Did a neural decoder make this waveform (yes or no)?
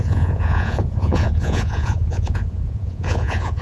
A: yes